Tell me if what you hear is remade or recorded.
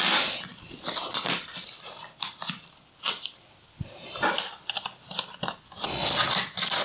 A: recorded